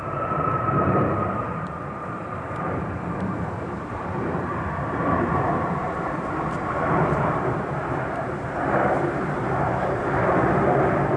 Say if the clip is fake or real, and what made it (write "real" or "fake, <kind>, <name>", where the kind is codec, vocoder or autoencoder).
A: fake, vocoder, BigVGAN v2